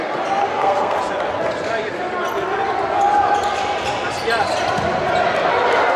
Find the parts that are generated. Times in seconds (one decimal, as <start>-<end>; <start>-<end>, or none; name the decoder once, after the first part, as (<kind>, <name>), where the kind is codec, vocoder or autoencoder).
0.4-1.0 (codec, SNAC)